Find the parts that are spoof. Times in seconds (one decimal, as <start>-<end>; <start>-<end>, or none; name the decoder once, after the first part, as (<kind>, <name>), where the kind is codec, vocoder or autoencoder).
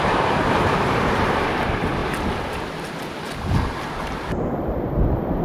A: 0.0-2.0 (vocoder, BigVGAN v2); 4.0-5.4